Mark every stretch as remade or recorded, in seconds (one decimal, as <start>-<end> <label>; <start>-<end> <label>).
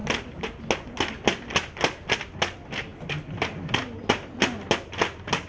0.0-5.5 recorded